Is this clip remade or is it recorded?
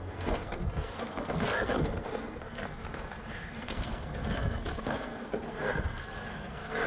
remade